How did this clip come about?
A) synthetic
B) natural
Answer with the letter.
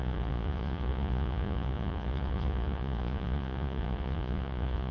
A